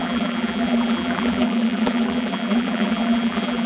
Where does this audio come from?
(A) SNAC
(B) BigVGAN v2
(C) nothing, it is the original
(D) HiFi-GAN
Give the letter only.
B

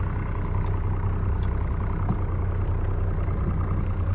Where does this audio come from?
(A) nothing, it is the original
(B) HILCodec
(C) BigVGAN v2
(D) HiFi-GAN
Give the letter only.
A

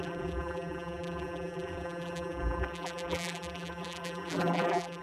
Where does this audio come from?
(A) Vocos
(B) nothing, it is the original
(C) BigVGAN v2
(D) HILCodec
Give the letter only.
C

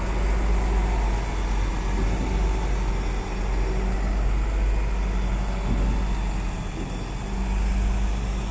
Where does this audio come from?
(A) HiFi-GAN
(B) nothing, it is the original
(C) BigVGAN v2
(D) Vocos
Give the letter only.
B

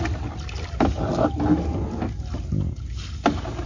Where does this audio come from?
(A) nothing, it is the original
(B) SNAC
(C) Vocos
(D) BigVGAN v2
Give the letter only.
A